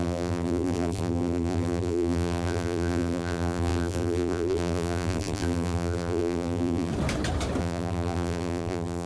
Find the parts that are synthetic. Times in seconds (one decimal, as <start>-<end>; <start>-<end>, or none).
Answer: 0.0-6.9; 7.6-9.1